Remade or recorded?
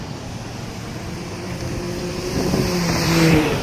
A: remade